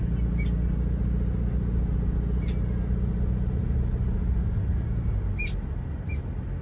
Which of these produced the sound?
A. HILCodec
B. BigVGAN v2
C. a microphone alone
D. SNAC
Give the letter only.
C